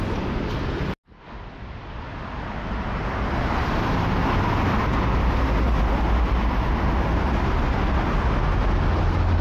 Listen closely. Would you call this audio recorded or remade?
recorded